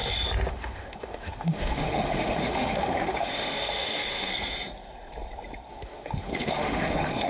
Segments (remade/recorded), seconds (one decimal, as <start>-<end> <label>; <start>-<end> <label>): 0.0-0.5 recorded; 0.5-4.3 remade; 4.3-5.7 recorded; 5.7-7.3 remade

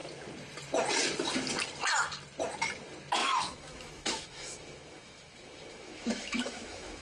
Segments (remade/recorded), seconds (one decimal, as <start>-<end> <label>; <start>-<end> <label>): 0.0-3.2 recorded; 3.2-7.0 remade

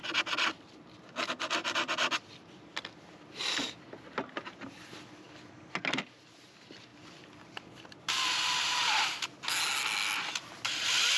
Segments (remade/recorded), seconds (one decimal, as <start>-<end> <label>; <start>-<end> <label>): 0.0-11.2 recorded

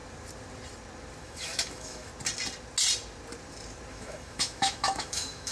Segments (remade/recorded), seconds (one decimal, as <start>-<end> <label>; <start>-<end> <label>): 0.0-1.2 recorded; 1.2-2.1 remade; 2.1-3.9 recorded; 3.9-5.5 remade

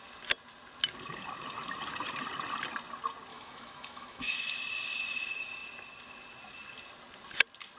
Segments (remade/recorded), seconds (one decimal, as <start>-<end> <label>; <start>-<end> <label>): 0.0-3.3 recorded; 3.3-4.3 remade; 4.3-7.8 recorded